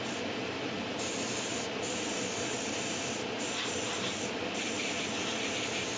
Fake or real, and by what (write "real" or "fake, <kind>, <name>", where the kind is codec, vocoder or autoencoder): real